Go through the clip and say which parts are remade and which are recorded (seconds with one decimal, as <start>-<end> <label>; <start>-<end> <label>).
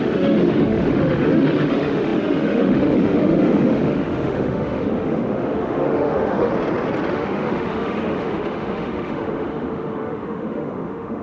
0.0-6.5 remade; 6.5-7.1 recorded; 7.1-11.2 remade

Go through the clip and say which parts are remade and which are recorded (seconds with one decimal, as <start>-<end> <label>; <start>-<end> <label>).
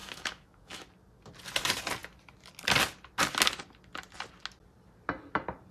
0.0-0.9 remade; 0.9-5.7 recorded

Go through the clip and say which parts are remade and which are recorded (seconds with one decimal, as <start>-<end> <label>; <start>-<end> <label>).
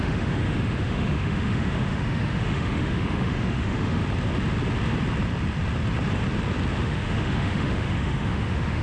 0.0-4.0 remade; 4.0-6.8 recorded; 6.8-8.8 remade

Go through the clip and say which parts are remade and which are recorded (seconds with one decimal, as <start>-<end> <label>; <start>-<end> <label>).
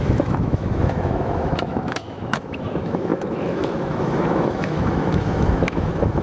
0.0-6.2 remade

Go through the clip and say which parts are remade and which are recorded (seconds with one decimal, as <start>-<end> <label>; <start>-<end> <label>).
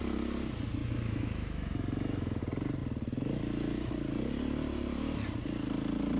0.0-0.8 recorded; 0.8-2.4 remade; 2.4-6.2 recorded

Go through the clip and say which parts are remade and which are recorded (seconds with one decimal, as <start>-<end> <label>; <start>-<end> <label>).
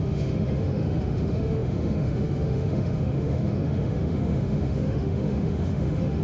0.0-6.2 remade